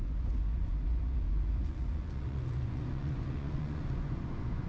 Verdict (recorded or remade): remade